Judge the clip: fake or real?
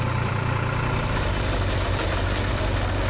fake